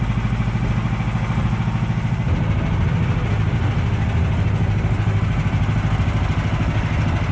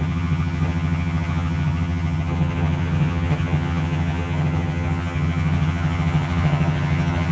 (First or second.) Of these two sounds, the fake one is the second